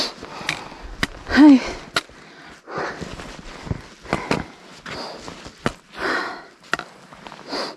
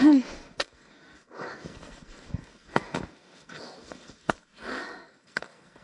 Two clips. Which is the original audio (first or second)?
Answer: first